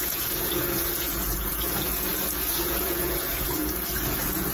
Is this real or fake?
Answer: fake